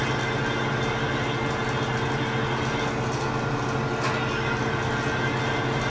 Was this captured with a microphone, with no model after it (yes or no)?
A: yes